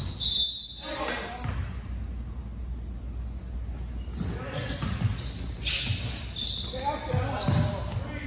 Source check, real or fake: real